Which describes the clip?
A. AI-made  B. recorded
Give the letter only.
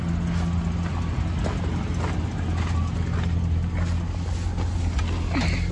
B